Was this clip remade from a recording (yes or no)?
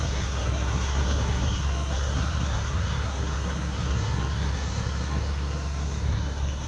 yes